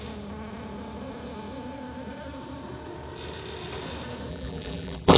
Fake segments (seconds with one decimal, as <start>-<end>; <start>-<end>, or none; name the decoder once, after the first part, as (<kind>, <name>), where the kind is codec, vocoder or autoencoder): 4.3-5.2 (vocoder, BigVGAN v2)